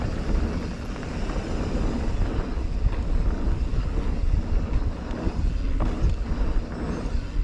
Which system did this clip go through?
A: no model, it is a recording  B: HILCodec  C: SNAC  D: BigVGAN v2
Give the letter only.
A